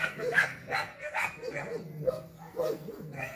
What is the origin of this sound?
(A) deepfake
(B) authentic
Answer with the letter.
A